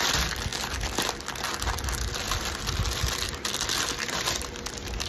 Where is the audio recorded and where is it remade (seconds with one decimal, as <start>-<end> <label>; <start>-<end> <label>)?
0.0-5.1 recorded